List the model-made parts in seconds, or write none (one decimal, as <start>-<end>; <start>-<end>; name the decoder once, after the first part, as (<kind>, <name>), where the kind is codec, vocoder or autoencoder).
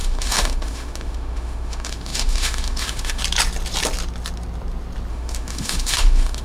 0.0-3.2 (autoencoder, DAC-VAE); 5.1-6.4